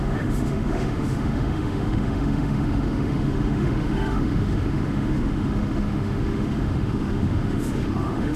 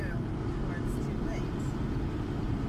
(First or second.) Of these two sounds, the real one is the second